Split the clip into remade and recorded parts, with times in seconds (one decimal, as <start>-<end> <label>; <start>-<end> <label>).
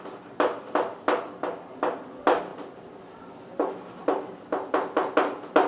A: 0.0-5.7 recorded